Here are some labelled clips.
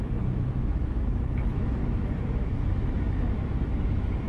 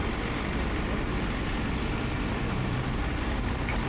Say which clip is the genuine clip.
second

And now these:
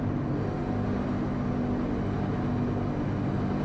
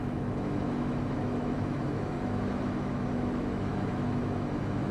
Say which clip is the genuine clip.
first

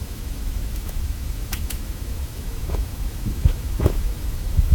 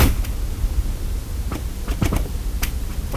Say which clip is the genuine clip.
second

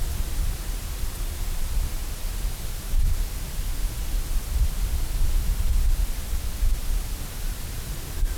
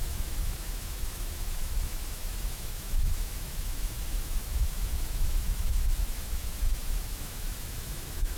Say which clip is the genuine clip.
first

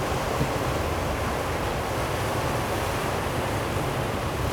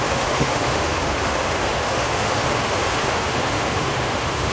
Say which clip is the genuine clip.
first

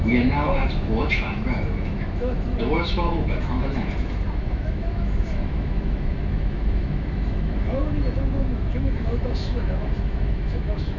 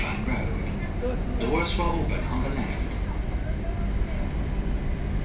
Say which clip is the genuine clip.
second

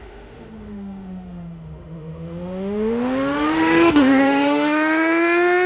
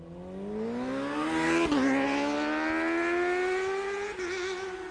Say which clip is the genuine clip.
second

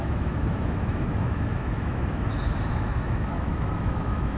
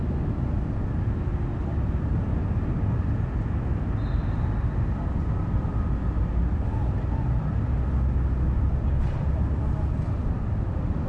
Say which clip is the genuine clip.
second